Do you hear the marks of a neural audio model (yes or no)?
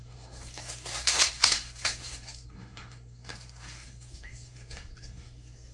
yes